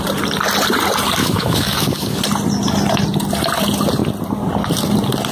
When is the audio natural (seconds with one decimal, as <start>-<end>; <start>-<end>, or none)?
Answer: 0.0-1.2; 2.2-5.3